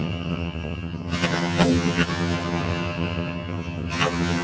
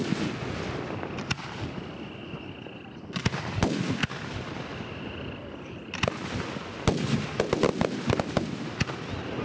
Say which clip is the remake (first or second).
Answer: first